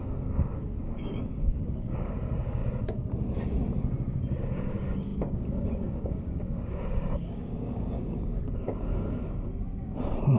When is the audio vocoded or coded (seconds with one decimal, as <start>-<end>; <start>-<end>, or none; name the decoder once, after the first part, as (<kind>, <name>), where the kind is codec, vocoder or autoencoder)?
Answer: 0.0-2.6 (codec, DAC); 4.4-9.2